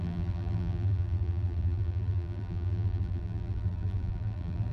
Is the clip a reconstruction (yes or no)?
yes